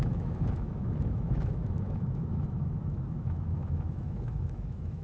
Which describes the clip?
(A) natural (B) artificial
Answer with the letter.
B